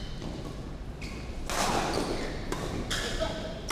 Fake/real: real